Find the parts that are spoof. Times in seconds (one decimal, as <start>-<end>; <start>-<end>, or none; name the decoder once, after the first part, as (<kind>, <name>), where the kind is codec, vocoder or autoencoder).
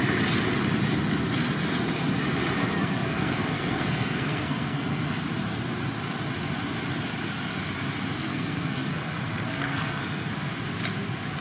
2.6-5.0 (codec, SNAC); 8.3-10.3